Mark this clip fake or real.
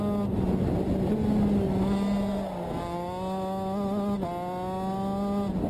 real